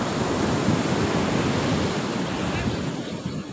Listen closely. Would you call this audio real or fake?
real